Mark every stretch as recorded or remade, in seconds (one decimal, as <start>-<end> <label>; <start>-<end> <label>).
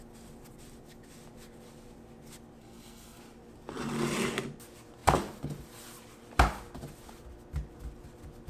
0.0-2.6 recorded; 2.6-3.2 remade; 3.2-8.5 recorded